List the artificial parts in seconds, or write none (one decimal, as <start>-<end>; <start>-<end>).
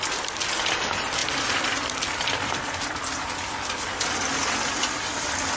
none